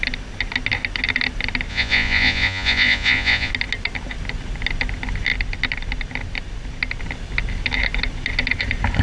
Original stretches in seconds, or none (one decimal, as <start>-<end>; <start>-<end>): 0.0-1.7; 3.5-9.0